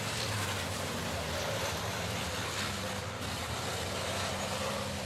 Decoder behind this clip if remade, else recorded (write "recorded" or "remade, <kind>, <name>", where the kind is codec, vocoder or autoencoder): recorded